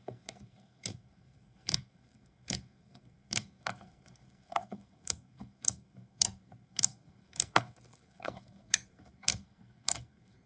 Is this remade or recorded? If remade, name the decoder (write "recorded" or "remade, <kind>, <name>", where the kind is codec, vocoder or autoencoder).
remade, codec, SNAC